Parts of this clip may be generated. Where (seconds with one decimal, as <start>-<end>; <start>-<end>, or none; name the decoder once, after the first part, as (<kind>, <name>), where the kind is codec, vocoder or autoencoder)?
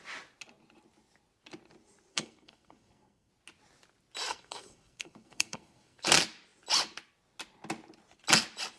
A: 2.1-3.3 (codec, SNAC); 4.3-6.1